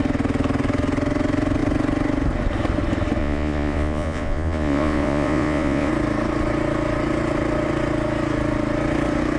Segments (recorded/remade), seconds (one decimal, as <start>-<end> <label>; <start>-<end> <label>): 0.0-3.2 recorded; 3.2-5.9 remade; 5.9-9.4 recorded